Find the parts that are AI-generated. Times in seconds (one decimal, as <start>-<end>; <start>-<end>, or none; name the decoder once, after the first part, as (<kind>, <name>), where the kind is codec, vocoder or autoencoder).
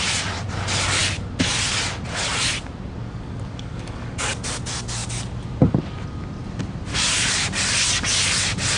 3.0-4.6 (codec, DAC)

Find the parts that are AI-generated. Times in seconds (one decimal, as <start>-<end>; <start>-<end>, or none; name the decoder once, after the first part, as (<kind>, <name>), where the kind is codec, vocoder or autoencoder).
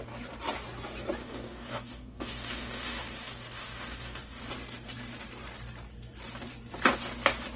1.2-4.5 (codec, DAC)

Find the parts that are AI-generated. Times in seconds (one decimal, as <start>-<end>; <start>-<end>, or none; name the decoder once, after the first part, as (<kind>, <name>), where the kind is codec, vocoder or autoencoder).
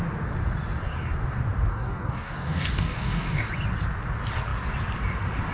1.7-3.5 (codec, DAC)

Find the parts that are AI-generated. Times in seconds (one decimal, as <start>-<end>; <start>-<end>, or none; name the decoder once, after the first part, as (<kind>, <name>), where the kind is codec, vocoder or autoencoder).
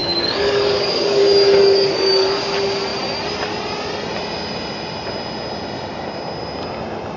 0.0-1.2 (codec, DAC); 1.6-2.4